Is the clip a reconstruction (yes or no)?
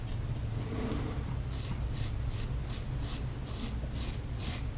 no